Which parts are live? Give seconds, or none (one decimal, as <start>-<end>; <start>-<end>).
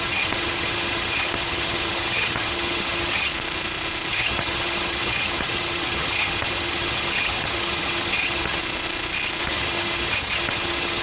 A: 3.3-4.1; 8.6-9.4